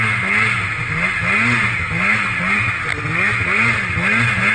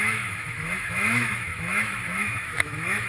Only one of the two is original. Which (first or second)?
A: first